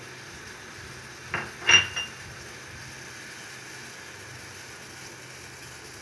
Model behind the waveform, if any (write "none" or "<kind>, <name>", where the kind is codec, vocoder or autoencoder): none